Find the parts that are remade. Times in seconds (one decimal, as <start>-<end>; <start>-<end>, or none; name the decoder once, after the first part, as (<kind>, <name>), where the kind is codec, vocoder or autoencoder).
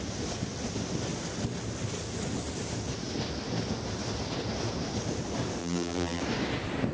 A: 5.6-6.2 (vocoder, BigVGAN v2)